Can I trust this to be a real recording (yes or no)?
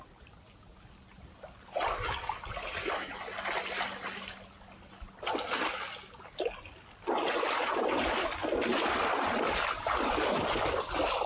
yes